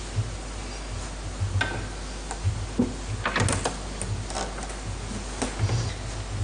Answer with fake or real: real